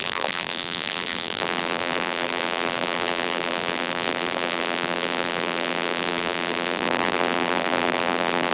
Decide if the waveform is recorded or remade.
remade